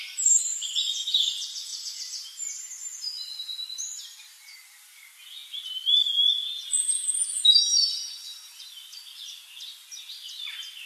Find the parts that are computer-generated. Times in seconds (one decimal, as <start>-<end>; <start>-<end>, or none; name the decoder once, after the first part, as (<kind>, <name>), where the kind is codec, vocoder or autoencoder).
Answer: 1.7-4.0 (vocoder, BigVGAN v2)